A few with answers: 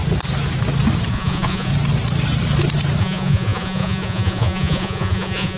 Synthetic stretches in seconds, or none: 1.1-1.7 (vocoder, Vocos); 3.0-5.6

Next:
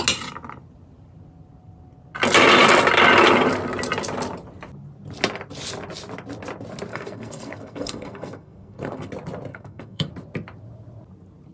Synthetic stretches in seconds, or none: 6.9-9.1 (codec, SNAC); 9.5-10.1

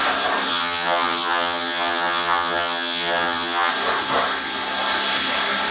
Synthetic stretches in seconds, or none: 0.5-3.7 (vocoder, HiFi-GAN)

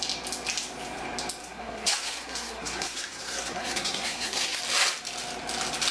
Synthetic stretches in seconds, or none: 1.4-4.6 (codec, SNAC)

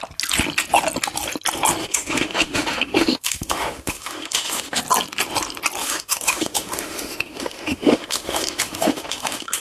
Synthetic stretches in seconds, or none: 1.8-4.8 (autoencoder, DAC-VAE); 5.8-9.6